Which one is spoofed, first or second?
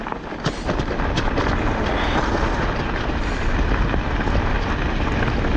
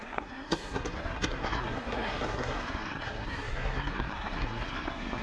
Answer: second